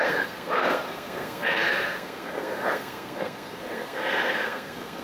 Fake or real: fake